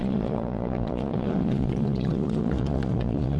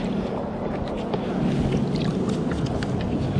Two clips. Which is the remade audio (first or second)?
first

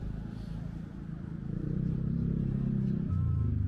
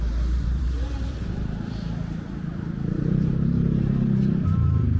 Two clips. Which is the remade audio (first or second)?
second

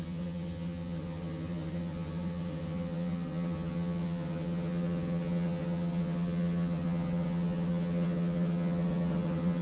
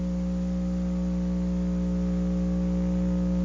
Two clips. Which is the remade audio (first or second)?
first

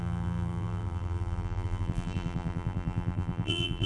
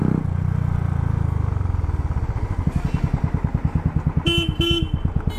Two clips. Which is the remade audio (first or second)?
first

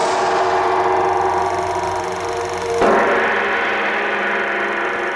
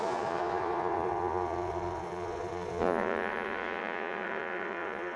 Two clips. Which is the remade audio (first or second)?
second